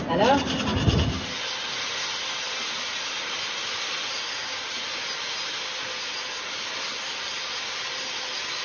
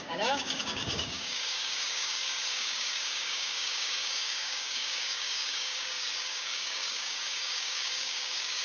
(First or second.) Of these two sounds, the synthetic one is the second